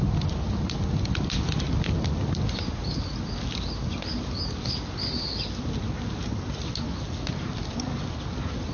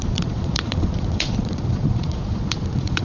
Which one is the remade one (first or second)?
second